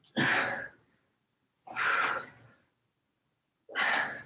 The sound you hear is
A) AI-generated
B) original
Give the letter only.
B